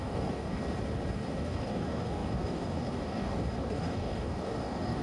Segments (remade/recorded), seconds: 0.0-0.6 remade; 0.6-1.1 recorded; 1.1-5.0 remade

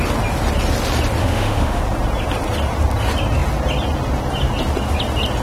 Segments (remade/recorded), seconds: 0.0-1.2 recorded; 1.2-1.8 remade; 1.8-5.4 recorded

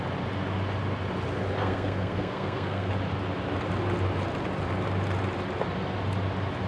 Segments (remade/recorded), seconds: 0.0-1.6 recorded; 1.6-2.9 remade; 2.9-6.7 recorded

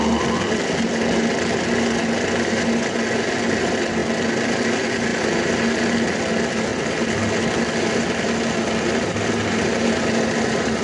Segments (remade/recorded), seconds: 0.0-10.8 recorded